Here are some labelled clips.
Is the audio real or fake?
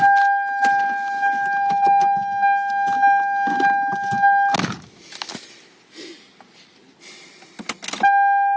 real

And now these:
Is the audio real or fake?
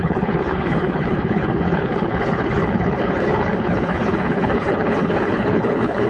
fake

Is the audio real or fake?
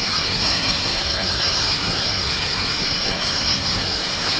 fake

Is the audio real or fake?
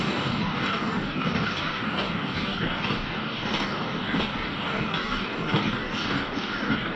fake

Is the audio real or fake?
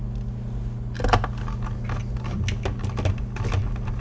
real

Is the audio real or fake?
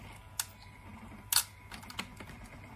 real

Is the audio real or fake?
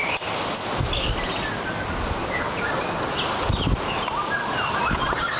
real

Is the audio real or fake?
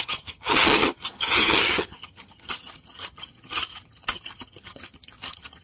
fake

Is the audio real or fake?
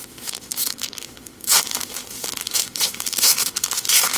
fake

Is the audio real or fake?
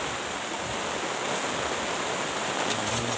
real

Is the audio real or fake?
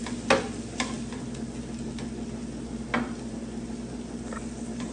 real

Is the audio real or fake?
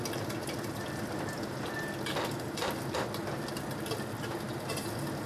real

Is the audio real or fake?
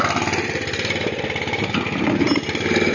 real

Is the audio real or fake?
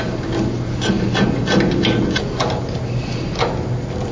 real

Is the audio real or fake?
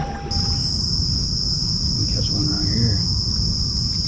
real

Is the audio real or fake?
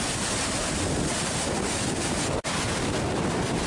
real